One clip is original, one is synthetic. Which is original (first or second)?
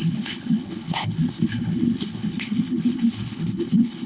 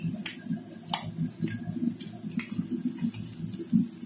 second